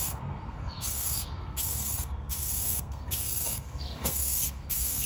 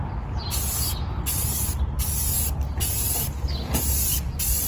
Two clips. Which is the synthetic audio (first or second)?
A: first